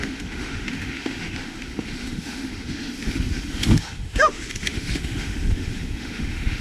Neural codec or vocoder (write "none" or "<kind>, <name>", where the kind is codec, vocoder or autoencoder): autoencoder, DAC-VAE